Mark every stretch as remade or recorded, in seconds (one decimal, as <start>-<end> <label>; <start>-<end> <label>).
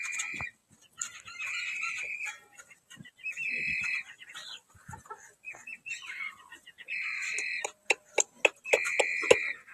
0.0-9.7 recorded